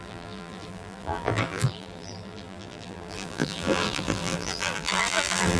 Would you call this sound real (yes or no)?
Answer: no